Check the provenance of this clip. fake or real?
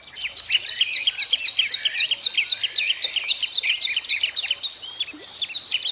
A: real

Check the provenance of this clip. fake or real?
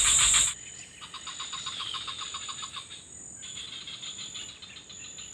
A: real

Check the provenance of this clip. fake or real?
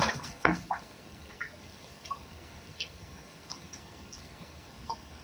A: fake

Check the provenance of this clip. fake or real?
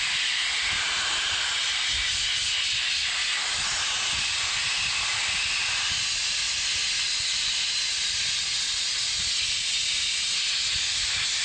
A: real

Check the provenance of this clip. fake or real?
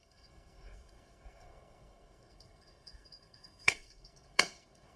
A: fake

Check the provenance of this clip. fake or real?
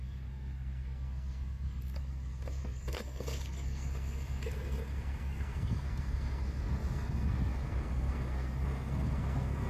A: fake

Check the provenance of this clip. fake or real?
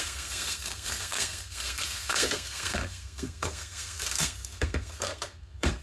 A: fake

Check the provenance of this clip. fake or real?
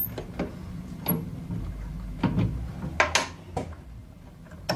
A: real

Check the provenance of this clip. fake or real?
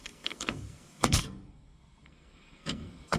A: fake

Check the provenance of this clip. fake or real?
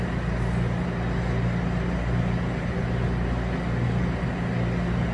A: real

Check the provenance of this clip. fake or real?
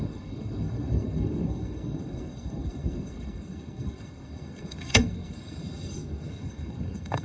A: fake